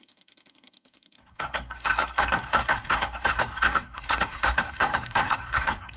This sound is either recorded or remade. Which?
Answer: remade